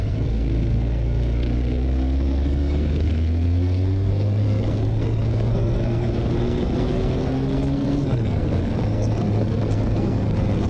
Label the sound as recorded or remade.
remade